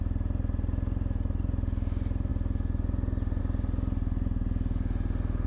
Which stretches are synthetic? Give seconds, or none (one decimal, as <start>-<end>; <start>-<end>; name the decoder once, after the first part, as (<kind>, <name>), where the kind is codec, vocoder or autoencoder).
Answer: none